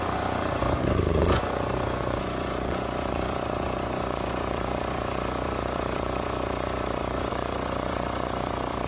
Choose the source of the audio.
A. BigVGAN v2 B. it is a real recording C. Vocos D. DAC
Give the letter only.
C